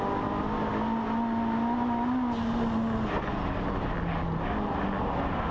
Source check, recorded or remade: recorded